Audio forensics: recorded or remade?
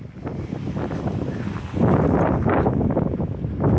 recorded